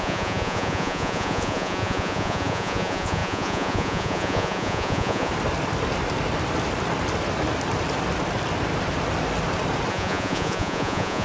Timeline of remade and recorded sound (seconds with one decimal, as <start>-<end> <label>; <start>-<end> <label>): 0.0-5.3 remade; 5.3-9.9 recorded; 9.9-11.2 remade